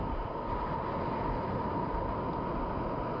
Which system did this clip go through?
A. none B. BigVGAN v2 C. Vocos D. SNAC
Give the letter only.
A